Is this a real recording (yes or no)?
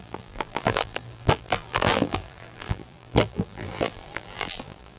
no